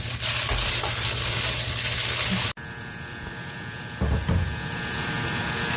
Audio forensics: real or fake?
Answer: real